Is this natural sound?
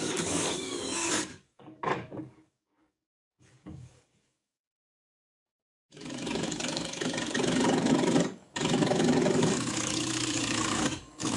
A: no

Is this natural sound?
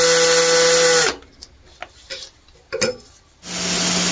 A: yes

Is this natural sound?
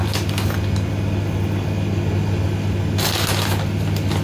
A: yes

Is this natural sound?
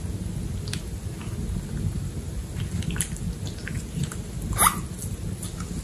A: yes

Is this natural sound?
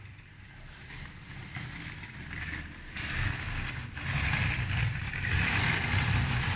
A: yes